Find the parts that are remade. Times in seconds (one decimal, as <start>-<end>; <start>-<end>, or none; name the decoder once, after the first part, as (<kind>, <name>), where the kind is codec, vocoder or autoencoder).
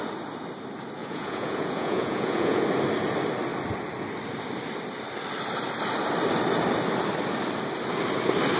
1.0-2.6 (vocoder, Vocos)